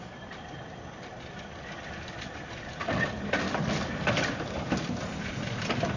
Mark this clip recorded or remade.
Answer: remade